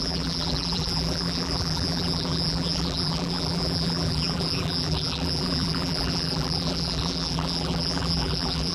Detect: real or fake fake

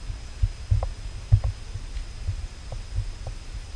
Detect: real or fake real